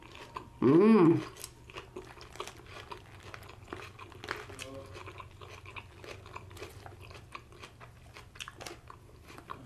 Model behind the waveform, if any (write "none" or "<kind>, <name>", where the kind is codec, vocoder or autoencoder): none